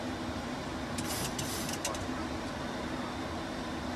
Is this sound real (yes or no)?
yes